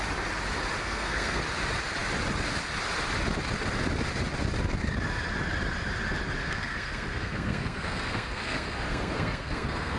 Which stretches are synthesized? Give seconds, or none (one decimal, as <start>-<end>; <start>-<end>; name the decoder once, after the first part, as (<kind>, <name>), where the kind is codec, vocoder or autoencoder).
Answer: 0.8-1.4 (codec, SNAC); 6.4-10.0